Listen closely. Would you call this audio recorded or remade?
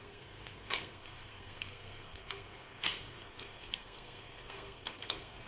remade